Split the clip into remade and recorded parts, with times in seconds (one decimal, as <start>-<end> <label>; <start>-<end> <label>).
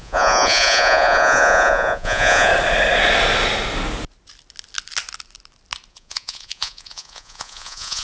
0.0-2.5 remade; 2.5-5.9 recorded; 5.9-8.0 remade